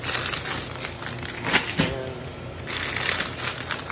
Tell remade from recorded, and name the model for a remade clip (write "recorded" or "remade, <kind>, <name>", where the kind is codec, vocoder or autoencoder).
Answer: recorded